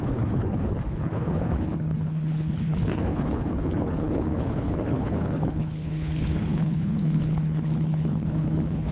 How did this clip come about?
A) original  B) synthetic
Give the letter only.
B